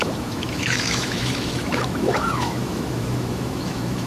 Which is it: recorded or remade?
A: remade